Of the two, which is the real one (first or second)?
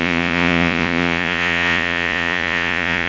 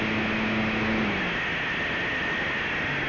second